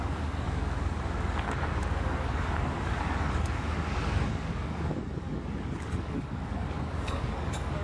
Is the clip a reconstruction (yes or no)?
yes